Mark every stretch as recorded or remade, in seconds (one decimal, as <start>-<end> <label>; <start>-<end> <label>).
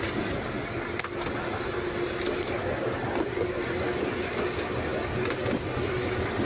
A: 0.0-6.5 recorded